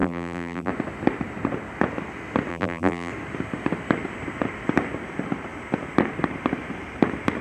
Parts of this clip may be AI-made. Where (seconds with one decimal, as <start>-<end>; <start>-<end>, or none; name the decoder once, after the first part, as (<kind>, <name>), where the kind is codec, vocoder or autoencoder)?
0.0-0.7 (vocoder, BigVGAN v2); 2.5-3.1